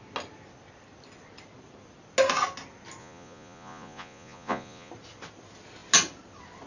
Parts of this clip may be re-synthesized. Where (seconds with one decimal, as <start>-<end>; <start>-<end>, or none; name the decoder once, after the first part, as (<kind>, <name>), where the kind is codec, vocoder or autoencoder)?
3.0-4.9 (vocoder, Vocos)